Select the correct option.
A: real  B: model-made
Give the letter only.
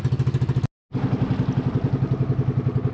A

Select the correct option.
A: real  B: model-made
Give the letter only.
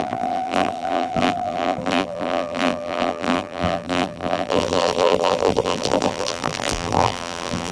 B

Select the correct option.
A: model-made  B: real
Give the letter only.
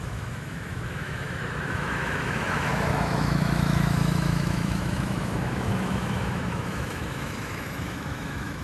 A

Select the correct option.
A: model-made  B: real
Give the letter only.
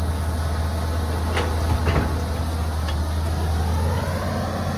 B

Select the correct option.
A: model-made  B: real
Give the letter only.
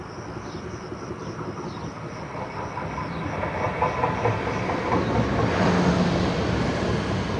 B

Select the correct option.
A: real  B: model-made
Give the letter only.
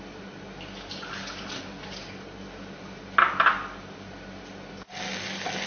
A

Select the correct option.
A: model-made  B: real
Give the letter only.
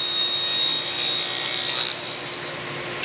B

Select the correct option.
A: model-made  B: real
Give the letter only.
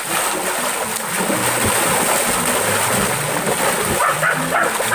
B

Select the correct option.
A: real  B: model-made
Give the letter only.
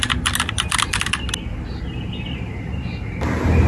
A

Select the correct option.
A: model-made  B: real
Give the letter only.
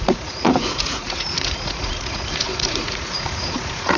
A